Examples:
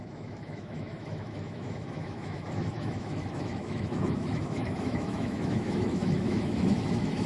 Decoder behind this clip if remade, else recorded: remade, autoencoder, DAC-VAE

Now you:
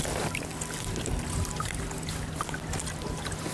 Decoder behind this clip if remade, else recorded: recorded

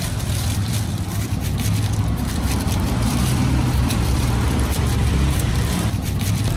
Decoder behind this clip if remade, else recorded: remade, vocoder, BigVGAN v2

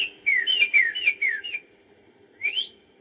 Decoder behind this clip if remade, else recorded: recorded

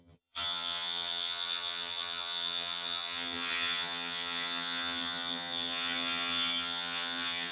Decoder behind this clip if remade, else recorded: remade, vocoder, HiFi-GAN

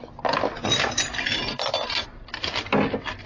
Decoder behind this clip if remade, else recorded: recorded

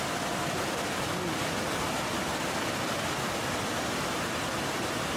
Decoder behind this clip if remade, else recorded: recorded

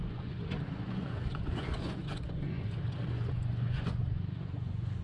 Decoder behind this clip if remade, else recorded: remade, vocoder, Vocos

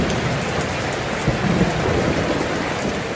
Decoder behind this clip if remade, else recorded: recorded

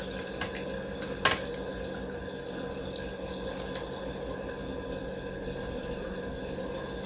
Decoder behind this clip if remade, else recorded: recorded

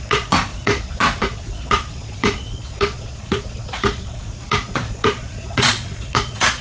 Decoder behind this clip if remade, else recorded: remade, vocoder, Vocos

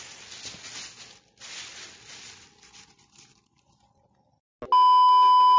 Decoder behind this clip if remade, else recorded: recorded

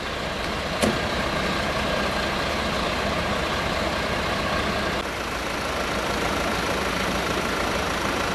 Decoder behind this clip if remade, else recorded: recorded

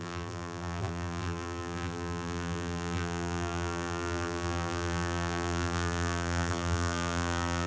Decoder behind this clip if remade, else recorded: remade, vocoder, BigVGAN v2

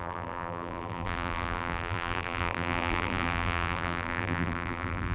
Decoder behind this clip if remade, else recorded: remade, vocoder, BigVGAN v2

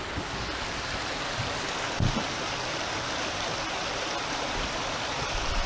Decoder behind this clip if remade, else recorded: recorded